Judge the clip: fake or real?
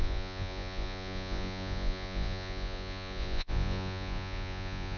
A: fake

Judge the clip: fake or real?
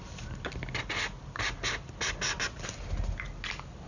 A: real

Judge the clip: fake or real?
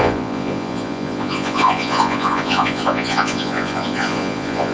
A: fake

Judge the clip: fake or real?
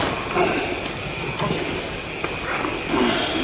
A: real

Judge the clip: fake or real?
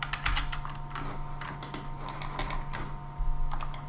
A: real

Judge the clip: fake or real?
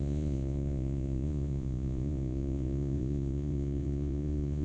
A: fake